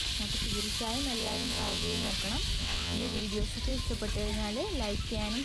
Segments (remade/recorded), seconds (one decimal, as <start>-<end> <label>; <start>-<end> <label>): 0.0-1.2 recorded; 1.2-2.1 remade; 2.1-2.6 recorded; 2.6-3.2 remade; 3.2-5.4 recorded